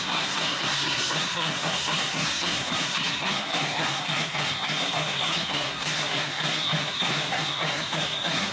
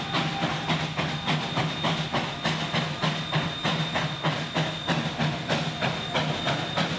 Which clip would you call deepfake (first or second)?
first